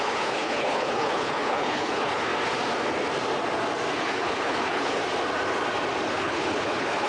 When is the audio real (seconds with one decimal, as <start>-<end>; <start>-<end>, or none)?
2.3-4.0; 5.0-6.1